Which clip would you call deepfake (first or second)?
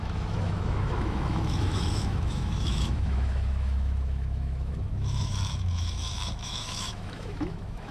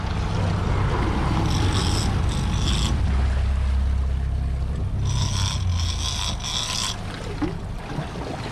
first